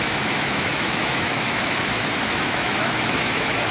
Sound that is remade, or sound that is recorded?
remade